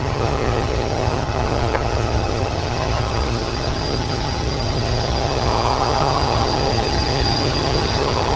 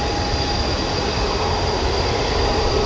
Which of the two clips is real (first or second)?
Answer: second